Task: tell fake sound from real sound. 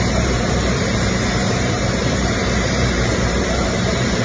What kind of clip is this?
fake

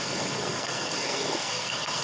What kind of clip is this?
fake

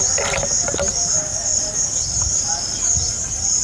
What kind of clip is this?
fake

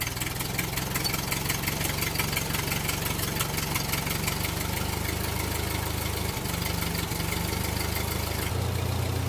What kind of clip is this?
real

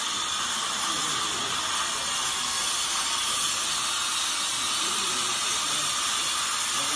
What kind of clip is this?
real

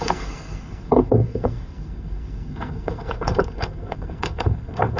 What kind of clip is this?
fake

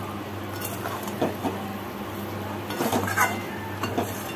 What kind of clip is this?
real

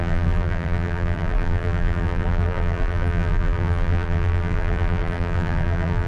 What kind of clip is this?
fake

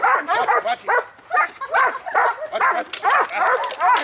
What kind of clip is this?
real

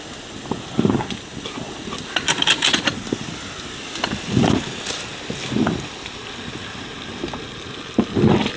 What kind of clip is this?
real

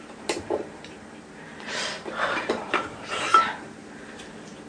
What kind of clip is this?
fake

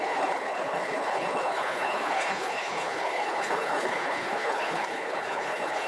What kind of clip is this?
fake